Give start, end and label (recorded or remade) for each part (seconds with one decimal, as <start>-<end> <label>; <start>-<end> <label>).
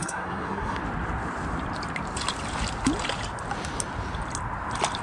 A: 0.0-0.8 remade; 0.8-5.0 recorded